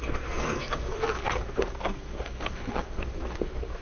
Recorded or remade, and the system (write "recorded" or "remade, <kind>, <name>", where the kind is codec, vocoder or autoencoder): remade, codec, SNAC